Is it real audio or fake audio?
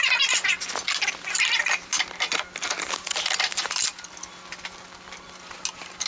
real